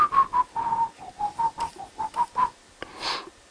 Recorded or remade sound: recorded